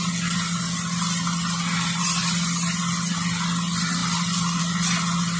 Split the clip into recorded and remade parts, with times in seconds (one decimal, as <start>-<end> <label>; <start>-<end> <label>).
0.0-5.4 recorded